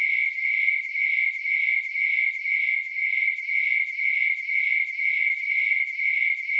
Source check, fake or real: real